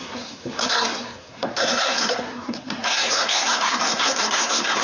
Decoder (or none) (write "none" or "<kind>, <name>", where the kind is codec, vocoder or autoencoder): codec, SNAC